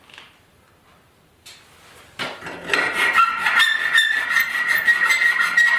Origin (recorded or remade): recorded